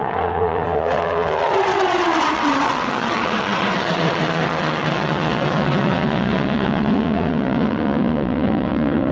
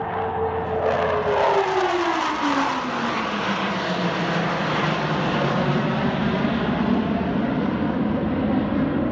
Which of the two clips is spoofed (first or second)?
first